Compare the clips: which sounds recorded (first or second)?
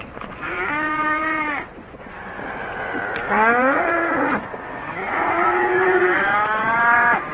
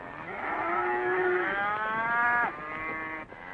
second